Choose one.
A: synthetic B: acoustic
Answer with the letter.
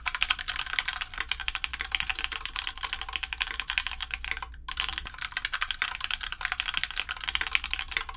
B